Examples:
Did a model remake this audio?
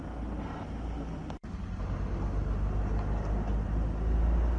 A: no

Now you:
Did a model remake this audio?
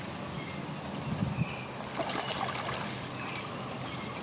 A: no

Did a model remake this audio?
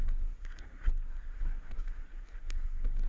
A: yes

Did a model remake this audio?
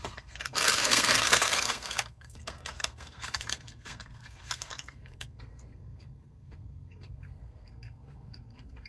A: yes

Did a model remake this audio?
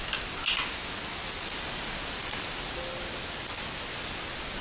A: no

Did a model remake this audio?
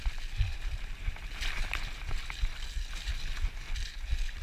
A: no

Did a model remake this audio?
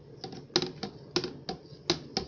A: no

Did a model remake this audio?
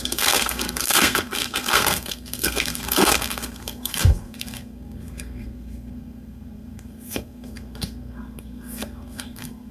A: yes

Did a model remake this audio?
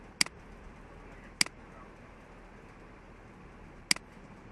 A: no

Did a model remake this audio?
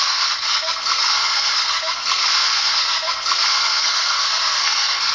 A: yes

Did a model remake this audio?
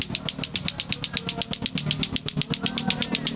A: no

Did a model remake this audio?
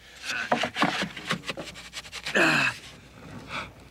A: no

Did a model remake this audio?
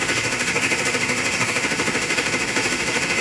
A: yes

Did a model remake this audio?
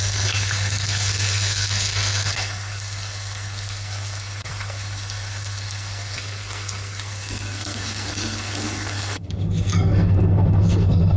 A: yes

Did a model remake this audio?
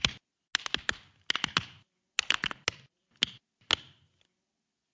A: no